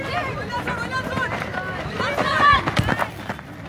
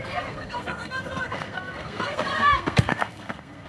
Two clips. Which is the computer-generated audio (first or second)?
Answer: second